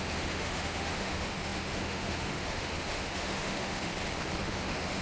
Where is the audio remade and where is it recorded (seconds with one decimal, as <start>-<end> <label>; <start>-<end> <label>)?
0.0-3.9 remade; 3.9-4.4 recorded; 4.4-5.0 remade

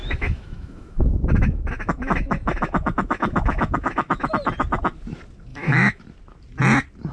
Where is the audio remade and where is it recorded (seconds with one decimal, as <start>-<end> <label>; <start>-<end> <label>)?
0.0-4.3 remade; 4.3-5.5 recorded; 5.5-6.0 remade; 6.0-7.1 recorded

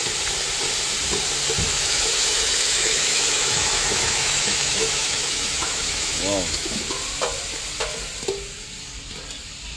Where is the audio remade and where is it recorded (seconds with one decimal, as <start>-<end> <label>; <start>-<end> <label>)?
0.0-1.7 recorded; 1.7-6.9 remade; 6.9-9.8 recorded